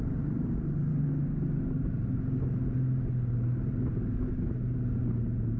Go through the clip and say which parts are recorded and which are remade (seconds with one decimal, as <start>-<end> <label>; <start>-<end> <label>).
0.0-5.6 recorded